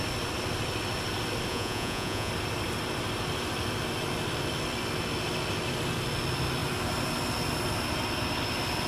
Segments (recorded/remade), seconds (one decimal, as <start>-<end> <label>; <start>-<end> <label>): 0.0-1.5 recorded; 1.5-2.3 remade; 2.3-8.9 recorded